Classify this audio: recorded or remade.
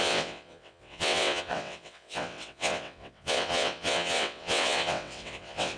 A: remade